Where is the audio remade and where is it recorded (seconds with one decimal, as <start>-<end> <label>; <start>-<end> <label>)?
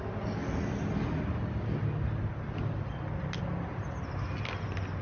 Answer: 0.0-5.0 recorded